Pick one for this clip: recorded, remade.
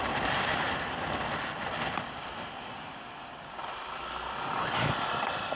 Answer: recorded